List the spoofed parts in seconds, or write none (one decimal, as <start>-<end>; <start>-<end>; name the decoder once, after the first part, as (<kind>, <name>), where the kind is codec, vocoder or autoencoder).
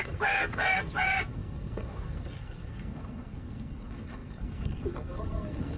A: 0.0-5.8 (codec, SNAC)